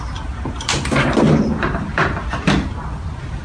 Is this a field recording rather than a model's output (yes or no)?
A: yes